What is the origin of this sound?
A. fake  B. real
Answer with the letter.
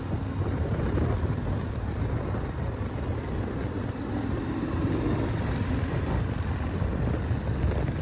B